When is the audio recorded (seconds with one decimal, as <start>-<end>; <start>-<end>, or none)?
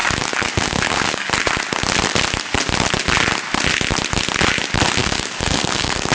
1.3-5.0